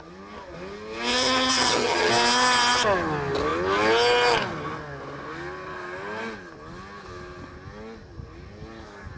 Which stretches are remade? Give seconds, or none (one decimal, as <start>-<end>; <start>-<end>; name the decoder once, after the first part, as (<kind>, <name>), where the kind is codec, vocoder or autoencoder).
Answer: 1.1-2.1 (vocoder, HiFi-GAN)